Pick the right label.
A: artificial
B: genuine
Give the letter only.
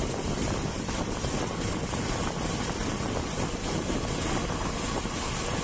B